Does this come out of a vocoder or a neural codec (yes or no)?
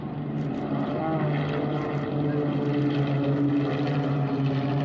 no